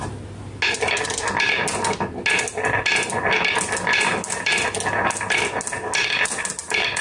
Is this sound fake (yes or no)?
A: no